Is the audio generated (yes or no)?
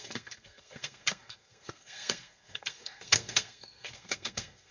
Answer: yes